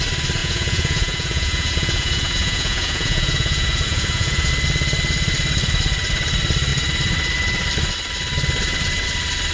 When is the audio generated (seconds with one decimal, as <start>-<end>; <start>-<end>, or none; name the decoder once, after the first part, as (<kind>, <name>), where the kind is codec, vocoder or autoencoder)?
0.4-4.5 (vocoder, Vocos)